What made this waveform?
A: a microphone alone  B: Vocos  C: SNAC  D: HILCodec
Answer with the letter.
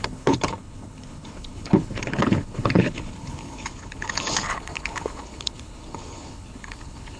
D